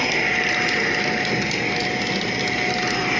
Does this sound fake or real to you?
real